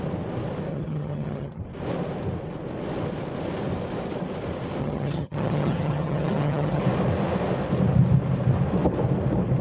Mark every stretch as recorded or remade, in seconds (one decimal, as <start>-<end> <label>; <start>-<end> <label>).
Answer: 0.0-0.7 recorded; 0.7-1.6 remade; 1.6-4.8 recorded; 4.8-6.8 remade; 6.8-9.6 recorded